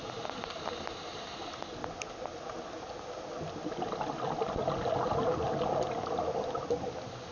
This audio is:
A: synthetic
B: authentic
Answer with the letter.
B